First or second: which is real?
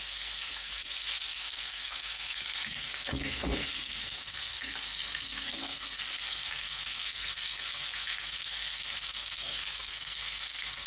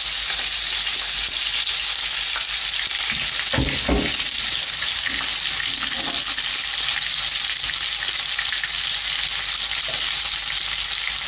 second